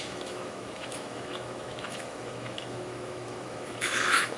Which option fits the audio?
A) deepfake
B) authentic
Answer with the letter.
A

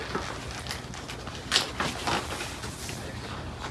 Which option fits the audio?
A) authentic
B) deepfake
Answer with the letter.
A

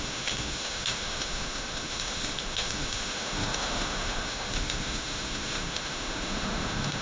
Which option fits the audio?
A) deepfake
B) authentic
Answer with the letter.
A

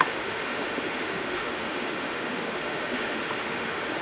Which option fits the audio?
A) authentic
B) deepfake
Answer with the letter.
B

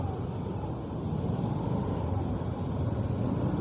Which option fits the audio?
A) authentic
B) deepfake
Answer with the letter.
A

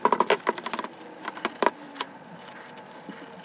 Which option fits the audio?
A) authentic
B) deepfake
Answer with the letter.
A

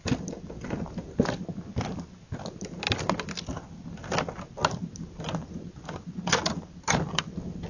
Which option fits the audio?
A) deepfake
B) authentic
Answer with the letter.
B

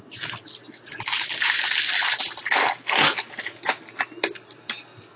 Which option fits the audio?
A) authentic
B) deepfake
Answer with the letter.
A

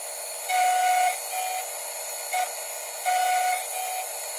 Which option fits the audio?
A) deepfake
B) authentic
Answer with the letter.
B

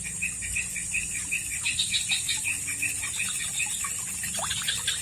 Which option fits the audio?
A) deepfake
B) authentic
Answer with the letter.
B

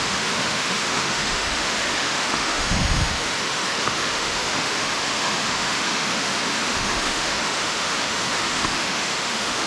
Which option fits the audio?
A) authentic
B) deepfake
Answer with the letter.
B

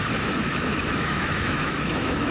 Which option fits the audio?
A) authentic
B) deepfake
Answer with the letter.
B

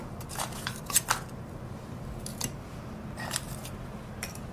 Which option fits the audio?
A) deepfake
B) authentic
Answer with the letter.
B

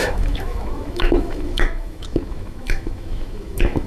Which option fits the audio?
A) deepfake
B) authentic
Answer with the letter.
A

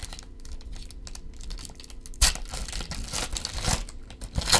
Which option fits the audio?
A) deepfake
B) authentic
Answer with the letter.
B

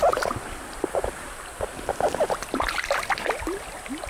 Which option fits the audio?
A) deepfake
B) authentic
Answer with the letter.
B